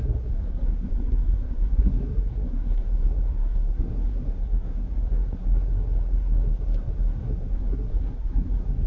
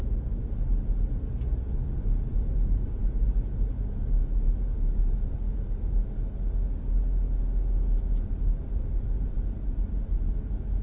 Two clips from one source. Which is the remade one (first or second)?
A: first